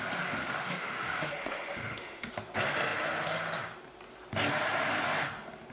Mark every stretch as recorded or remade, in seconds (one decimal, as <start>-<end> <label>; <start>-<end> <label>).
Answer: 0.0-0.4 recorded; 0.4-2.3 remade; 2.3-5.7 recorded